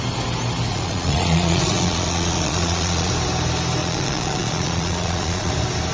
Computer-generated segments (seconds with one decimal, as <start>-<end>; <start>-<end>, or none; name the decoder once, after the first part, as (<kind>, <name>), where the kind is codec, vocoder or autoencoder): 0.7-3.1 (vocoder, Vocos); 3.8-5.5